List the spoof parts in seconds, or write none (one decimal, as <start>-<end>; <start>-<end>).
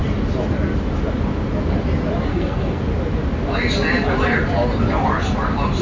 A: 2.3-2.8